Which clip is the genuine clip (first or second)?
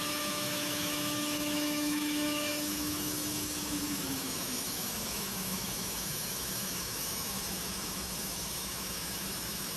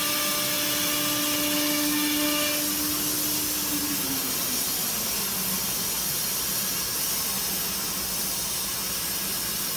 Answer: second